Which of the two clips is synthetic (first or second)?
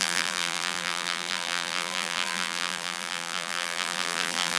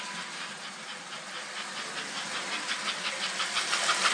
first